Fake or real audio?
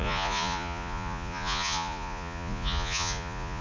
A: fake